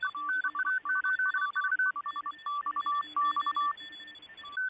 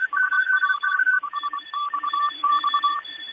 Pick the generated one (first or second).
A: second